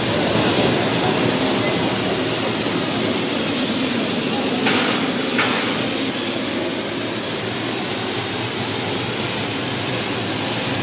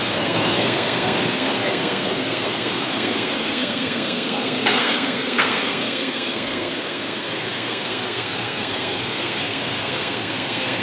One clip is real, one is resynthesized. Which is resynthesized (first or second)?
second